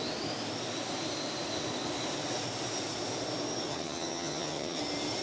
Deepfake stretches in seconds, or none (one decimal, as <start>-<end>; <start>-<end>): 3.7-4.8